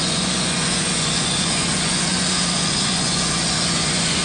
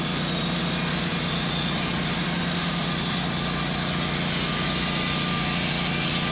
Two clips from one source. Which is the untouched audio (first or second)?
second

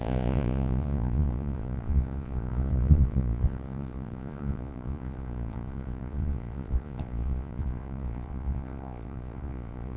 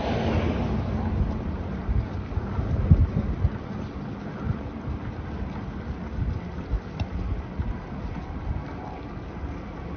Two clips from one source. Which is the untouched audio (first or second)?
second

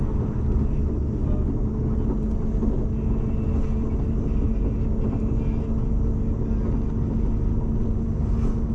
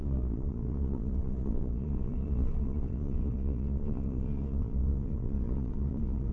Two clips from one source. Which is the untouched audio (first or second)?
first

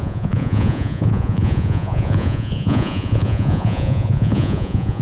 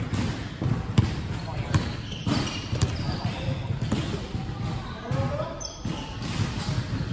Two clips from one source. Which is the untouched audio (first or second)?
second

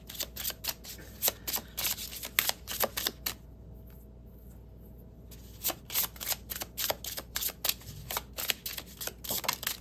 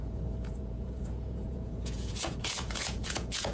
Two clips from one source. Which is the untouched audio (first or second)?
first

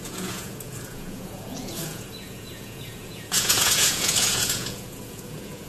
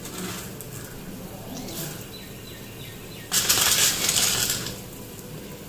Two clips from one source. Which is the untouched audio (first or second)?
second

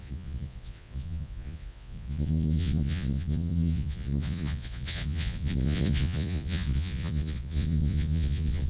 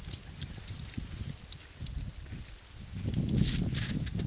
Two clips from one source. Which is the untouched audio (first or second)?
second